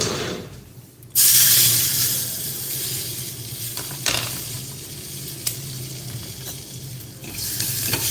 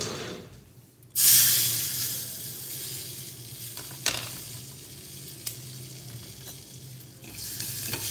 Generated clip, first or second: first